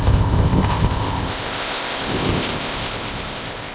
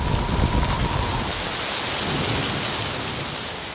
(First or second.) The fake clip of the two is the first